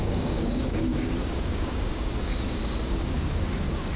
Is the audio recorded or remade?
remade